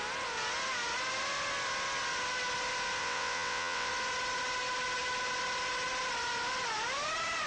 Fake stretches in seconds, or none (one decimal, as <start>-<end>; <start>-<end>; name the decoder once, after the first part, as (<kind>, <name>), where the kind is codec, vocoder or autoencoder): 3.0-3.9 (vocoder, WaveNeXt)